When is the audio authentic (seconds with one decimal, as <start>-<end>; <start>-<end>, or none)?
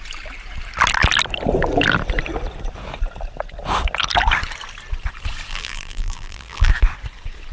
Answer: 0.0-5.5; 6.7-7.5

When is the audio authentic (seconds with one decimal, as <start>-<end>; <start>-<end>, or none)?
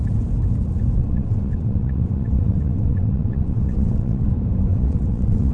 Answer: 0.0-1.0; 4.3-4.7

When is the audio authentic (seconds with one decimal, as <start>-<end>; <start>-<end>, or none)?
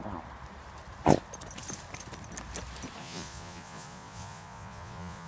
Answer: 0.0-3.0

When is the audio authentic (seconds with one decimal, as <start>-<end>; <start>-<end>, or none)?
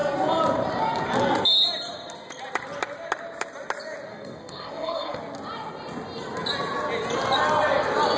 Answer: 0.0-4.1; 5.2-8.2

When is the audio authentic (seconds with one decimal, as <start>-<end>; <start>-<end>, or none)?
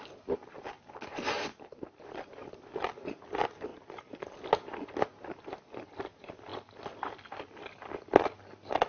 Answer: 0.0-8.9